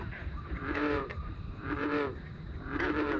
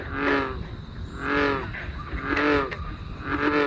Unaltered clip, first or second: second